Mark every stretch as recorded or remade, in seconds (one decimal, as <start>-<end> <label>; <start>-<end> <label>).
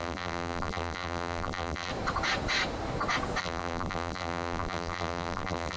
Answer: 0.0-1.9 remade; 1.9-3.4 recorded; 3.4-5.8 remade